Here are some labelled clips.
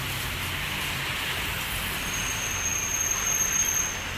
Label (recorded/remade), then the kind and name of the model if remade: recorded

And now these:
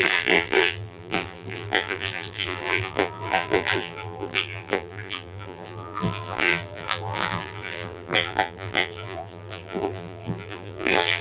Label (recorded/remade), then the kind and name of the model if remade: remade, vocoder, BigVGAN v2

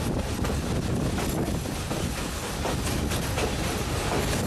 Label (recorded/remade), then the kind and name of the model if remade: recorded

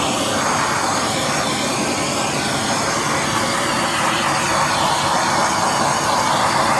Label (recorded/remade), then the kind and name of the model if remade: recorded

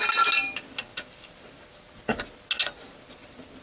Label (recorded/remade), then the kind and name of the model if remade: recorded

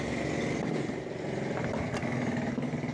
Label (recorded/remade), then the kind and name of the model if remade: recorded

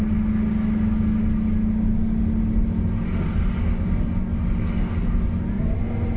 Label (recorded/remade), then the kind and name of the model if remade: recorded